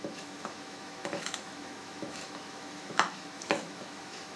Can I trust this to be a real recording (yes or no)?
no